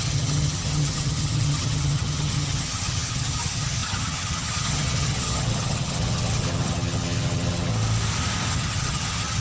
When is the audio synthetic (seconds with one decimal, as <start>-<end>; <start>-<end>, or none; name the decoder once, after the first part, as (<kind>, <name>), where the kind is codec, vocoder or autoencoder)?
0.0-7.7 (vocoder, HiFi-GAN); 8.5-9.4